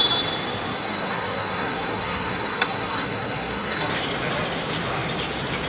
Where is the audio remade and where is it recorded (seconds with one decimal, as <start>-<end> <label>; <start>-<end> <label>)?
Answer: 0.0-0.7 recorded; 0.7-3.9 remade; 3.9-5.7 recorded